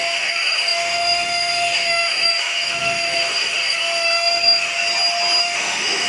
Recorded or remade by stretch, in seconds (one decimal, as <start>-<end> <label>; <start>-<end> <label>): 0.0-4.7 remade; 4.7-5.4 recorded; 5.4-6.1 remade